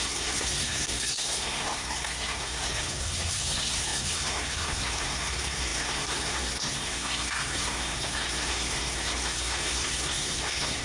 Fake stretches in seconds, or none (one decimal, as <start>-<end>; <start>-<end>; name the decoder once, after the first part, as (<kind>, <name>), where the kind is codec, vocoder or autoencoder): 0.0-10.8 (codec, SNAC)